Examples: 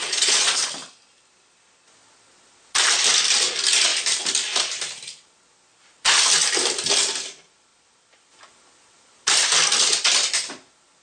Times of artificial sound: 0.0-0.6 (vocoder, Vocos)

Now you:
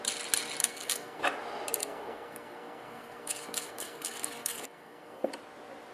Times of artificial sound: 0.6-1.2 (codec, SNAC); 1.8-5.3